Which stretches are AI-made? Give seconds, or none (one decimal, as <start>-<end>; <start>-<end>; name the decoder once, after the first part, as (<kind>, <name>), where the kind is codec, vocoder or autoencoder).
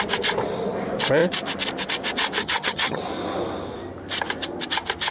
2.4-3.0 (vocoder, HiFi-GAN)